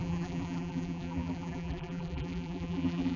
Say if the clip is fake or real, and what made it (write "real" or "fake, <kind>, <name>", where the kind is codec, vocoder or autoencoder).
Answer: fake, vocoder, BigVGAN v2